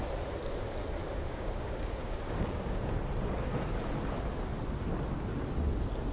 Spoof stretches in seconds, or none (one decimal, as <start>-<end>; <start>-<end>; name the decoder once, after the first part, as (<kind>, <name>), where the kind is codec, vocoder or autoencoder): 1.0-2.9 (codec, DAC)